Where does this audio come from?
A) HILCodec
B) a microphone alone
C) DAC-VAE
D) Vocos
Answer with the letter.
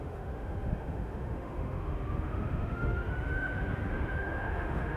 C